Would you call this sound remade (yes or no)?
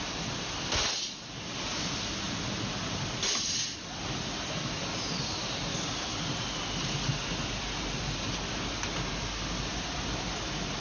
no